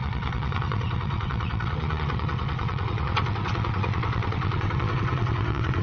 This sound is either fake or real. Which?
fake